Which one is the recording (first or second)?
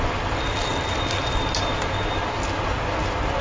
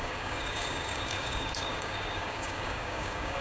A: first